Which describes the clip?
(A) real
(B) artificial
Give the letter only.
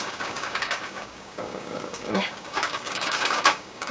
B